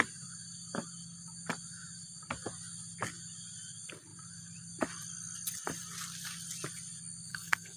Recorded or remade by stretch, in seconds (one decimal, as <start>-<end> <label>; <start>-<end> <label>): 0.0-7.3 recorded; 7.3-7.8 remade